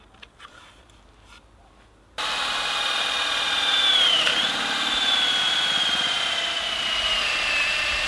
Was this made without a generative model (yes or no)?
yes